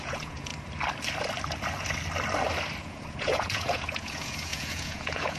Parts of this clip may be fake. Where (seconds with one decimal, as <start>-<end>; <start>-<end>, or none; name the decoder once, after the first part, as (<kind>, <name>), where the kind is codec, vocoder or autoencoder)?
0.0-0.5 (vocoder, Vocos); 2.8-5.4